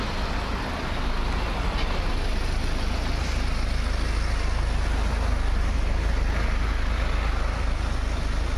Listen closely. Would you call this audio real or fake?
real